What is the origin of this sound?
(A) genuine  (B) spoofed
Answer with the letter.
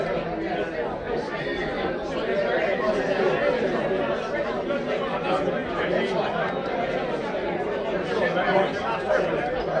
A